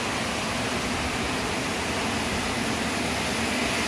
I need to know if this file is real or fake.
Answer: real